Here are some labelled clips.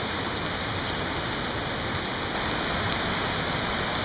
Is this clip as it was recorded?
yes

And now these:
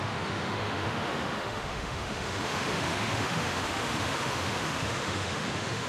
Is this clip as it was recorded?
no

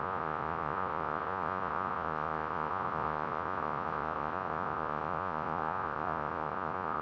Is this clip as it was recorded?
no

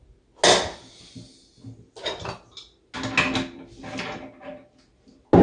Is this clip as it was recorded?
yes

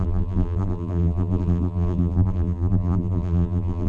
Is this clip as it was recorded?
no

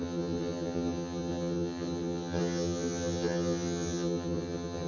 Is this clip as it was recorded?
no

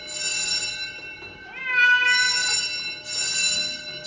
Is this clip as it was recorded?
yes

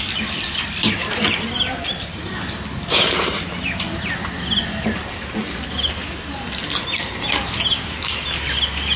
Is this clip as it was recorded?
yes